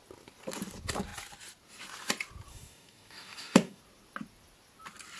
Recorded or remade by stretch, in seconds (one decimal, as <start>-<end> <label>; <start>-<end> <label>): 0.0-2.5 recorded; 2.5-3.8 remade; 3.8-5.2 recorded